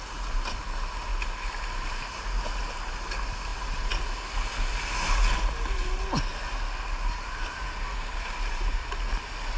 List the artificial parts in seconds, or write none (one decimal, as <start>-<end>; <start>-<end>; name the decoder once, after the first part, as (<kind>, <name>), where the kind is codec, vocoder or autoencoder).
none